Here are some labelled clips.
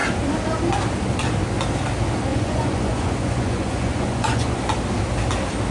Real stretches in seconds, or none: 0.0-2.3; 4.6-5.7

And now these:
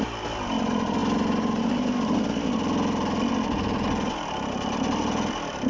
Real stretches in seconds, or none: 0.0-5.7

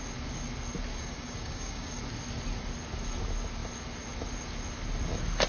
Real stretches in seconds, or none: 0.0-0.9; 2.0-5.5

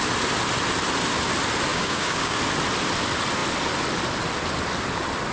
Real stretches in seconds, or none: 0.0-1.7; 2.4-5.3

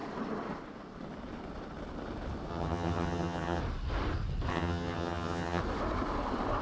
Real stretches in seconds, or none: 0.0-2.5; 3.6-4.5; 5.6-6.6

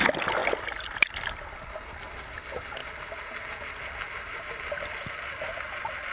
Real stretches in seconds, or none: 0.0-6.1

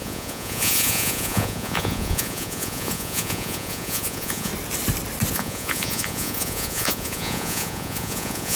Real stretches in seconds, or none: 4.5-5.3